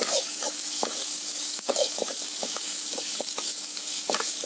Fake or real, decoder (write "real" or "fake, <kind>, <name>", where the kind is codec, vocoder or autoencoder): fake, codec, DAC